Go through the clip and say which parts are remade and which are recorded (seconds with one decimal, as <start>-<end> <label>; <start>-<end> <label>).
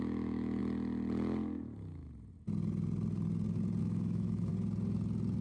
0.0-0.6 remade; 0.6-3.8 recorded; 3.8-4.5 remade; 4.5-5.4 recorded